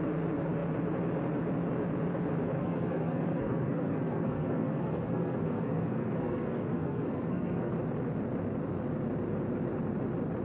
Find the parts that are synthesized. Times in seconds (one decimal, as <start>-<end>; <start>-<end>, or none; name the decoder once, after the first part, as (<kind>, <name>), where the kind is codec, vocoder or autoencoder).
2.6-7.7 (codec, SNAC)